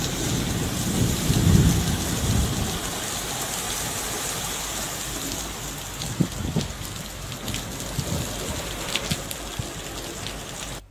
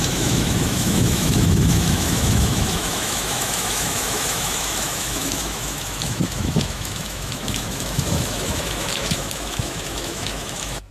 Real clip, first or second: first